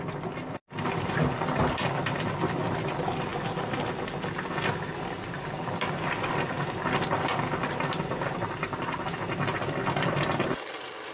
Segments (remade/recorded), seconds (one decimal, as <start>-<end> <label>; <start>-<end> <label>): 0.0-11.1 recorded